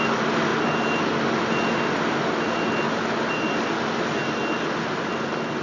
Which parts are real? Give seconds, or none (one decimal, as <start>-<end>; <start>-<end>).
0.0-5.6